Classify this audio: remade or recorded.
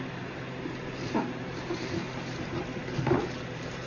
remade